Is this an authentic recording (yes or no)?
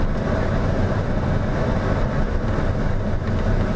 yes